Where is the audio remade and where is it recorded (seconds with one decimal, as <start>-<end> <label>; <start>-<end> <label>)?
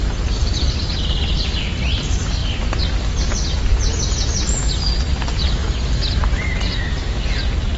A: 0.0-7.8 recorded